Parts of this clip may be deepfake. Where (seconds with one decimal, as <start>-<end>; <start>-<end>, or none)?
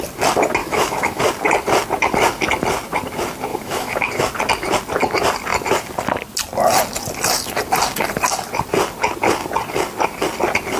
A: 0.6-1.2; 3.5-4.1